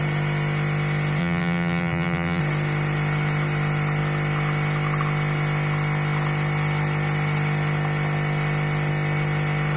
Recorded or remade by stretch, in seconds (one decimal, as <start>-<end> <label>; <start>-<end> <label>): 0.0-1.2 recorded; 1.2-2.4 remade; 2.4-9.8 recorded